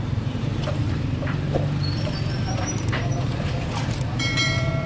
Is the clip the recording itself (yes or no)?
no